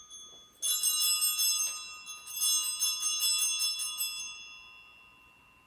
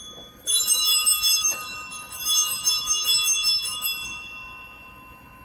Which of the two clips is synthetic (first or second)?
second